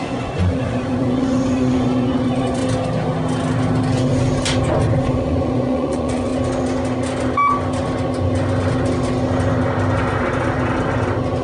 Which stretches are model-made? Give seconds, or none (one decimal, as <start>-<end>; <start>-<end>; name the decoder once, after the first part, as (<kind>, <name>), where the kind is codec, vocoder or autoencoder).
0.0-2.6 (vocoder, Vocos); 5.0-6.3